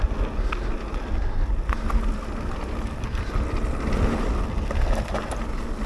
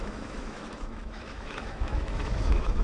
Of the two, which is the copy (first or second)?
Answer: second